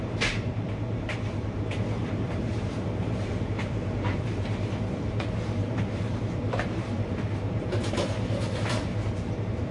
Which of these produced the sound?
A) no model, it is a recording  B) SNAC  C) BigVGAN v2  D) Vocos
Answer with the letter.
C